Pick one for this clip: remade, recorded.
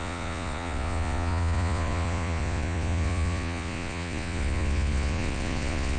remade